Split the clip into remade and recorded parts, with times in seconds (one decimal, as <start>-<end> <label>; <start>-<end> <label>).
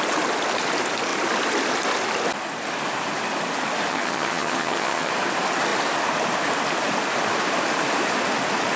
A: 0.0-3.9 recorded; 3.9-5.1 remade; 5.1-8.8 recorded